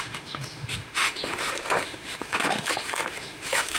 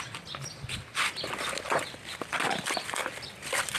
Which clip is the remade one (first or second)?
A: first